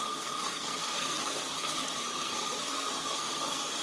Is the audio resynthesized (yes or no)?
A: yes